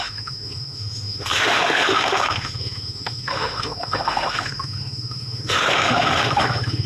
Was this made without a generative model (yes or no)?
no